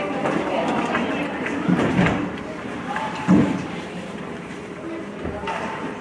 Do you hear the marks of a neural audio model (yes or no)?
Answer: yes